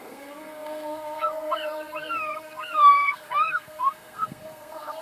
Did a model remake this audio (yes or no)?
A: yes